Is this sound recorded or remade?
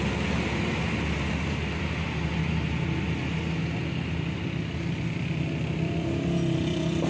recorded